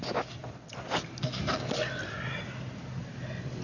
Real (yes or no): yes